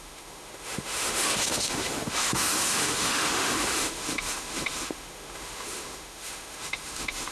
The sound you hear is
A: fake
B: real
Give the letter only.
A